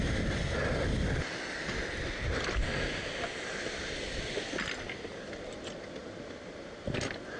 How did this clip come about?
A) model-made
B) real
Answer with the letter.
B